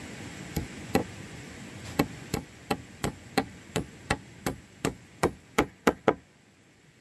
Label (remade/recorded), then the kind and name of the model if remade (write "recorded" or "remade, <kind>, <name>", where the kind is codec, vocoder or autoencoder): remade, vocoder, Vocos